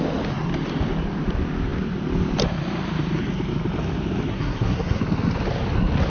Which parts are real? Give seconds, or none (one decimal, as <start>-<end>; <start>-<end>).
0.0-4.3; 5.0-6.1